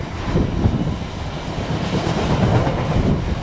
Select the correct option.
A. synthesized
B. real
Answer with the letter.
B